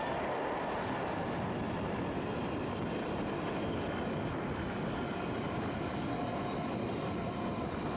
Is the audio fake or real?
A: real